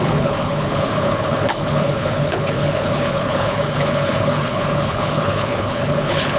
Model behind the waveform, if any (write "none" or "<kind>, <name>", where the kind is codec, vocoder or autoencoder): codec, HILCodec